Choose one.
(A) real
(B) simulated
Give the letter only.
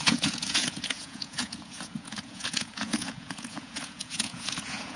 B